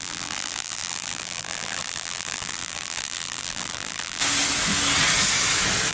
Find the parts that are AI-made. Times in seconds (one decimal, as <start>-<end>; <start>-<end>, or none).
0.0-4.2